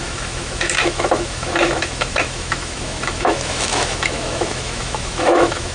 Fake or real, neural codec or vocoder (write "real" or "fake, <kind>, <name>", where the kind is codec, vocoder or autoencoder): fake, autoencoder, DAC-VAE